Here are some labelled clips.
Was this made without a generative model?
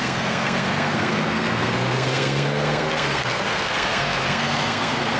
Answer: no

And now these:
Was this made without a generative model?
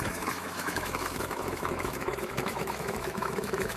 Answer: no